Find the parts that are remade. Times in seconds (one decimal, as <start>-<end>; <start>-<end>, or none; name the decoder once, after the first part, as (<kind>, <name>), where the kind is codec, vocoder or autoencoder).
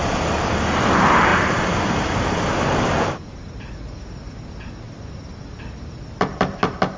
1.3-2.4 (vocoder, BigVGAN v2)